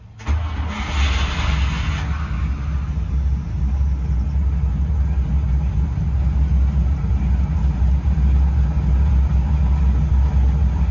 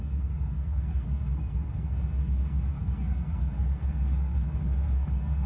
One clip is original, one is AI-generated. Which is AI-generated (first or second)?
second